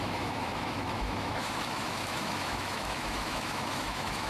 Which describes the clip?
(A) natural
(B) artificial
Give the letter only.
B